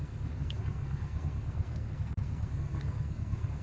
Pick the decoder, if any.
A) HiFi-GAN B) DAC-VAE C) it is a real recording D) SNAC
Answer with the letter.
D